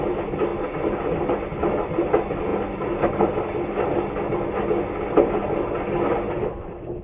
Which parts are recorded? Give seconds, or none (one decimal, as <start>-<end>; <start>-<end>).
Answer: 0.0-7.0